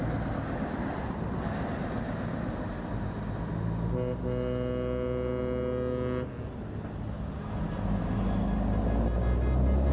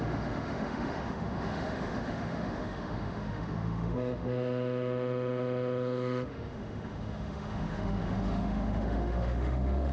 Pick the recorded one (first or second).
first